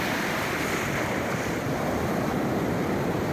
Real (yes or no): no